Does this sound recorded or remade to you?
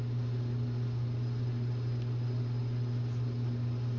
recorded